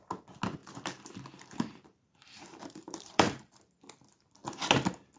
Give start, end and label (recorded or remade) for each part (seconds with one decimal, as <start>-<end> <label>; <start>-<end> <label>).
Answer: 0.0-0.6 recorded; 0.6-3.7 remade; 3.7-5.2 recorded